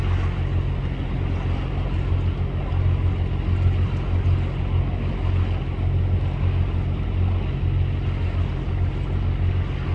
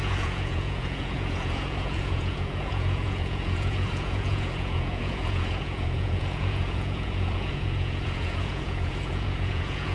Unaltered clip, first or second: first